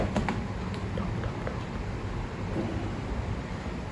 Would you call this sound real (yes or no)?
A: yes